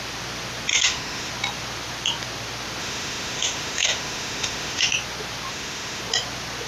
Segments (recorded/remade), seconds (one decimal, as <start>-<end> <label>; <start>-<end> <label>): 0.0-0.7 recorded; 0.7-1.3 remade; 1.3-2.8 recorded; 2.8-4.9 remade; 4.9-5.5 recorded; 5.5-6.0 remade; 6.0-6.7 recorded